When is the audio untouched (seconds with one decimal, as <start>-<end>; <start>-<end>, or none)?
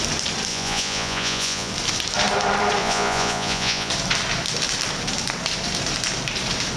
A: 0.0-0.5; 1.7-2.8; 3.9-6.8